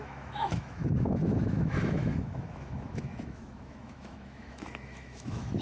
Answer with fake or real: fake